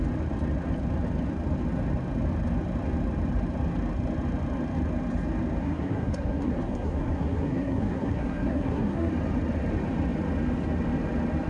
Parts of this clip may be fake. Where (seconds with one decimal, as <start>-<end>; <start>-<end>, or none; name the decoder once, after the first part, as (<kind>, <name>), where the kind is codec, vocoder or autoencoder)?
5.6-9.1 (codec, SNAC)